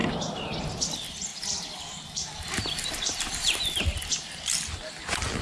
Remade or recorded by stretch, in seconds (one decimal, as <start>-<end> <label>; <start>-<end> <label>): 0.0-0.8 remade; 0.8-1.3 recorded; 1.3-4.3 remade; 4.3-5.4 recorded